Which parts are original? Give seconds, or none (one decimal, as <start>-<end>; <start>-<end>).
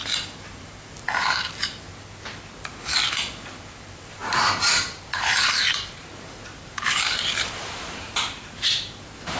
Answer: 0.0-0.6; 1.9-3.6